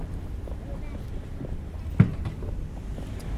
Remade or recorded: recorded